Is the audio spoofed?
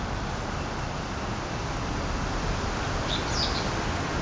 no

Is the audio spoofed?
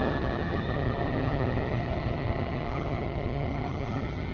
yes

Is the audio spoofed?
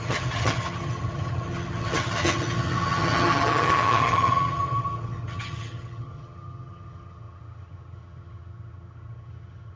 yes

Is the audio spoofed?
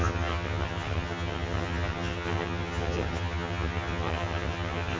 yes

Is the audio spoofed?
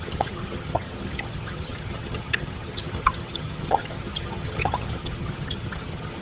yes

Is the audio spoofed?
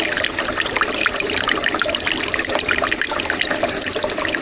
no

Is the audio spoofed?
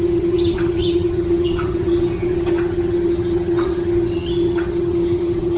yes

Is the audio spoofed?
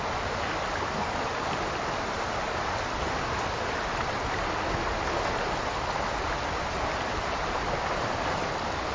no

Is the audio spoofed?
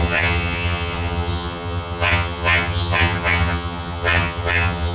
yes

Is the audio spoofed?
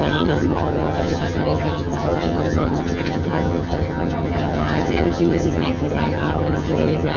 yes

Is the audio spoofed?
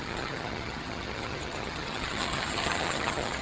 yes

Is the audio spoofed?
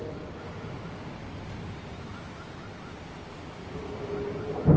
no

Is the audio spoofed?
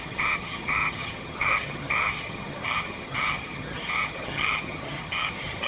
yes